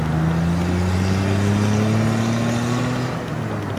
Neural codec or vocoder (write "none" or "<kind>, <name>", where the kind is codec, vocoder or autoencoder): none